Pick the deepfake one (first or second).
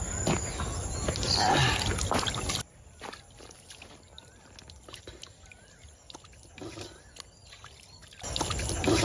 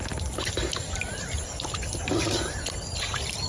second